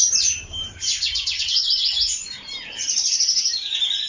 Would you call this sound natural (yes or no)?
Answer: no